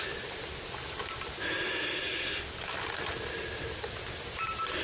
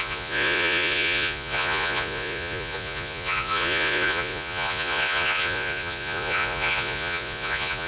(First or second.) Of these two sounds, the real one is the first